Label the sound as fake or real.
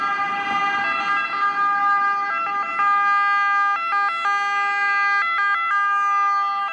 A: real